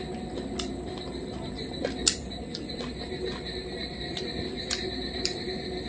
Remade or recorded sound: recorded